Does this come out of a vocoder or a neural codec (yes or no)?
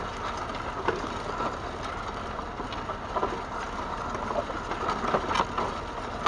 no